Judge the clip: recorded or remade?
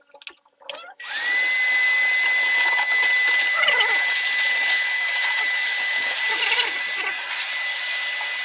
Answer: recorded